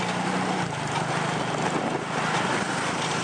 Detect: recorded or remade recorded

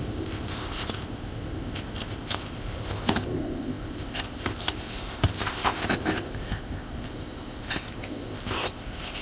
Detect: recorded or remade remade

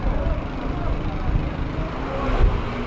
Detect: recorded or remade recorded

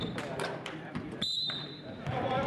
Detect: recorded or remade remade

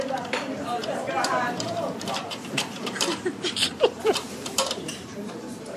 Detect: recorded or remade remade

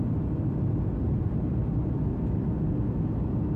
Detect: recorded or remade recorded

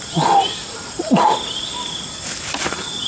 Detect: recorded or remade recorded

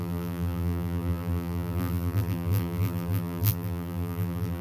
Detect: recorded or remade remade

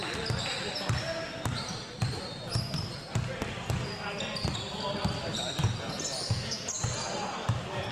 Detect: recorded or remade recorded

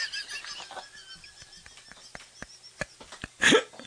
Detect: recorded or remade recorded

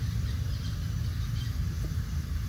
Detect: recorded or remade recorded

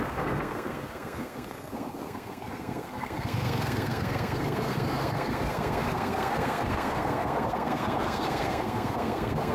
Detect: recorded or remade remade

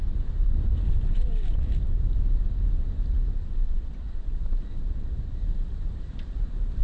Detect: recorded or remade remade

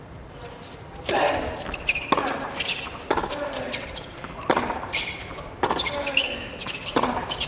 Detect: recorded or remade recorded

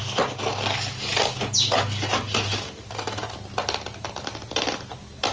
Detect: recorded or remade recorded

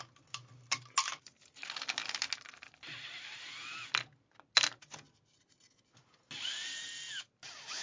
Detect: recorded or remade recorded